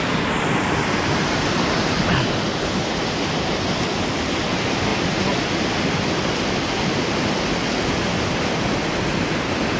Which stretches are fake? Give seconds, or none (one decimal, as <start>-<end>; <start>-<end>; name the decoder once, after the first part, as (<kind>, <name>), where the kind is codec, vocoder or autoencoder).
none